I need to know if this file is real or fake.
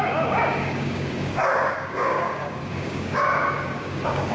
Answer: fake